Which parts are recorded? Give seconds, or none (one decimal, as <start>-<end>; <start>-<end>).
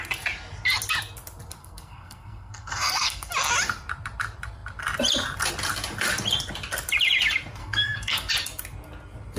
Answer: 0.0-1.6; 3.3-7.6; 8.3-9.4